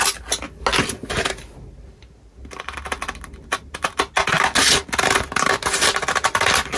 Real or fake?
real